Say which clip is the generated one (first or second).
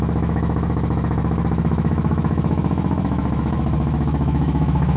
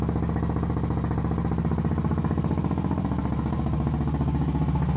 first